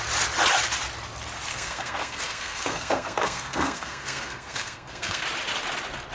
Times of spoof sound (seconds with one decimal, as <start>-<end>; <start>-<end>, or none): 1.5-5.2